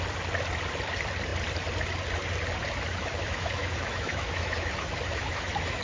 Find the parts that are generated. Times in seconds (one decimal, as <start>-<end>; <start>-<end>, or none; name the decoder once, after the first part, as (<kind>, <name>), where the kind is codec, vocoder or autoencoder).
3.0-5.8 (autoencoder, DAC-VAE)